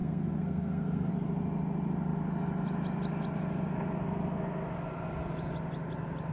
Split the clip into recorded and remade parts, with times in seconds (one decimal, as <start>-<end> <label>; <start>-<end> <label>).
0.0-1.1 remade; 1.1-6.3 recorded

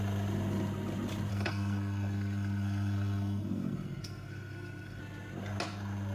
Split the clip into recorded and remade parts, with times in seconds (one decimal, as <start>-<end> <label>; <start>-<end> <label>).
0.0-1.3 recorded; 1.3-5.0 remade; 5.0-6.1 recorded

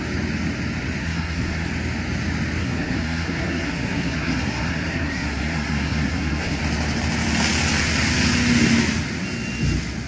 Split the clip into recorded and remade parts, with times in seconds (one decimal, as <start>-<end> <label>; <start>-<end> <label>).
0.0-1.0 recorded; 1.0-1.7 remade; 1.7-2.6 recorded; 2.6-6.6 remade; 6.6-10.1 recorded

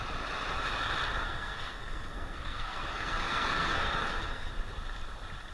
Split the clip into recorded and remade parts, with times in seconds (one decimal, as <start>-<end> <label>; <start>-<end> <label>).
0.0-1.2 recorded; 1.2-4.5 remade; 4.5-5.5 recorded

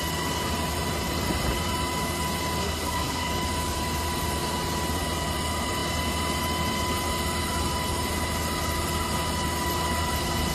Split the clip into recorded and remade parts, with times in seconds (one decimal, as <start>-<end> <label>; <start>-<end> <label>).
0.0-2.6 recorded; 2.6-3.3 remade; 3.3-10.5 recorded

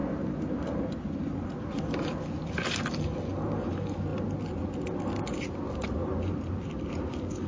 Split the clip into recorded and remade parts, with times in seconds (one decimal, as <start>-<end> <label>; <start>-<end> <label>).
0.0-7.5 recorded

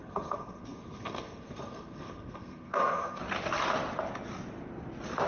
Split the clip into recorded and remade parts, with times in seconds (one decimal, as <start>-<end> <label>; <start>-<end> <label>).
0.0-3.2 remade; 3.2-5.3 recorded